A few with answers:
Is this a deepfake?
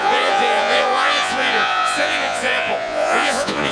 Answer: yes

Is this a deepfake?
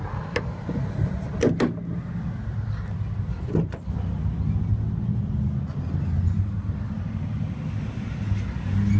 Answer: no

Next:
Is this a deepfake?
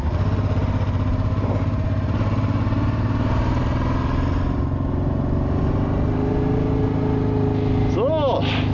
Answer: no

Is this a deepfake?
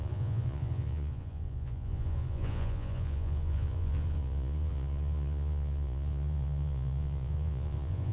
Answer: yes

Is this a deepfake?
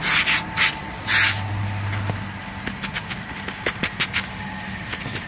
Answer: no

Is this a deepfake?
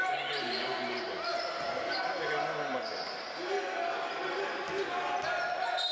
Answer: no